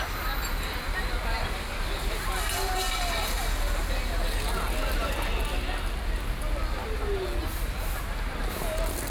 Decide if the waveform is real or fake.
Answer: real